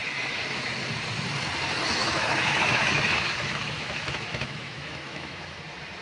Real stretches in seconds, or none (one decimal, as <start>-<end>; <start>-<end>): 0.0-2.0; 5.6-6.0